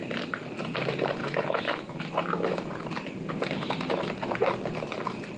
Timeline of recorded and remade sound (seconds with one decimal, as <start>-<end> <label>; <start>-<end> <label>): 0.0-1.2 recorded; 1.2-2.1 remade; 2.1-5.4 recorded